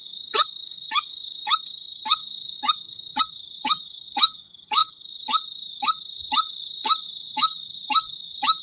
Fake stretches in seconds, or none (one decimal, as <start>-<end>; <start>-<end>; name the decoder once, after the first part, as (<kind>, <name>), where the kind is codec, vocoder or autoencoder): 0.0-8.6 (codec, DAC)